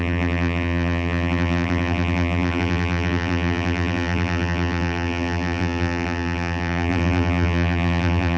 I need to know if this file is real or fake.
fake